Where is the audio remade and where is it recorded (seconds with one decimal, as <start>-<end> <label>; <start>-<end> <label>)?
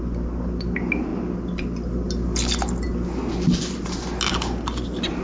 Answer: 0.0-5.2 recorded